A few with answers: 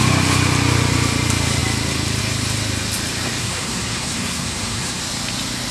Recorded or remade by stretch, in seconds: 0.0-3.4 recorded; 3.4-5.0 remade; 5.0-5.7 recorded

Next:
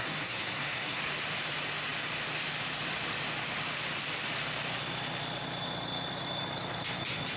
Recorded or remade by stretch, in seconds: 0.0-1.0 remade; 1.0-7.4 recorded

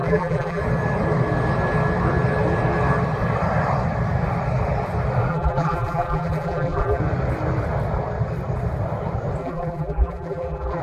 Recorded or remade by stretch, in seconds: 0.0-0.6 remade; 0.6-5.3 recorded; 5.3-7.0 remade; 7.0-9.4 recorded; 9.4-10.8 remade

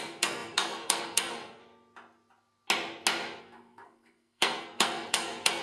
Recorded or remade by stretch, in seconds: 0.0-1.6 remade; 1.6-3.4 recorded; 3.4-5.6 remade

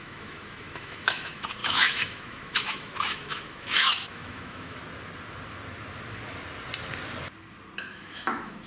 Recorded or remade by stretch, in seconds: 0.0-4.8 remade; 4.8-7.8 recorded; 7.8-8.7 remade